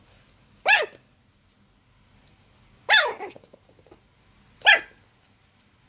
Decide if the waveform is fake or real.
real